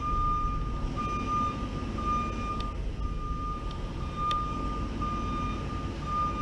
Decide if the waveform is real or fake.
real